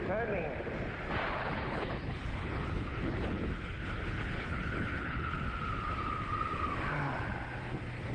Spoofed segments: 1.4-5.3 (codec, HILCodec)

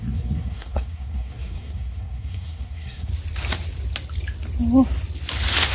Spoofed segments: 0.0-3.1 (codec, SNAC)

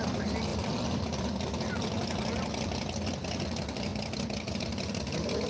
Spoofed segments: none

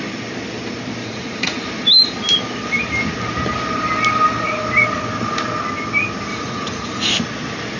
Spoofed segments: 1.0-1.7 (vocoder, Vocos); 6.3-7.1

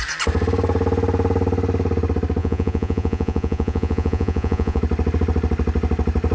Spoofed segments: 2.4-4.8 (vocoder, Vocos)

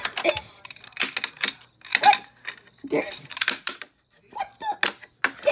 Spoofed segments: 1.9-4.8 (vocoder, BigVGAN v2)